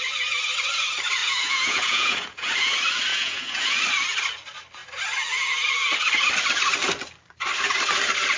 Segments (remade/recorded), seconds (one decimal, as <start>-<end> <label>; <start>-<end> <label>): 0.0-1.2 recorded; 1.2-2.5 remade; 2.5-3.1 recorded; 3.1-3.8 remade; 3.8-8.4 recorded